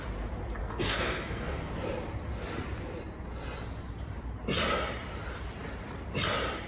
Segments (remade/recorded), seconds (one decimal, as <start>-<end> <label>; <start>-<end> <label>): 0.0-0.6 recorded; 0.6-1.7 remade; 1.7-6.7 recorded